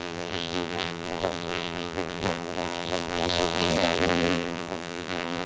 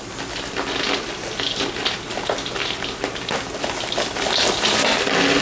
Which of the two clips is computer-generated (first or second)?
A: first